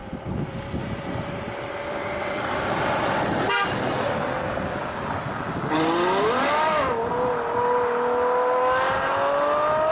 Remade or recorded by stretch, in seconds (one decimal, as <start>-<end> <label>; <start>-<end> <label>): 0.0-3.3 remade; 3.3-4.7 recorded; 4.7-5.4 remade; 5.4-9.9 recorded